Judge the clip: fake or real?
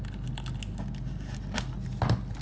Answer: real